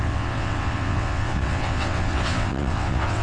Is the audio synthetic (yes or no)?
yes